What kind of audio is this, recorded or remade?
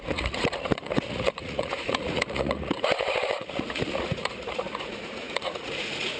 remade